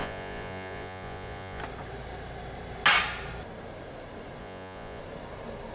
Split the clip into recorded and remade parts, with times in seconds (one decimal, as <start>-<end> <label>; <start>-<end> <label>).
0.0-1.6 remade; 1.6-4.4 recorded; 4.4-5.0 remade; 5.0-5.7 recorded